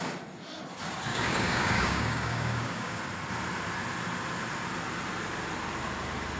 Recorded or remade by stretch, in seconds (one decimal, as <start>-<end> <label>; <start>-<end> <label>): 0.0-1.1 recorded; 1.1-3.0 remade; 3.0-6.4 recorded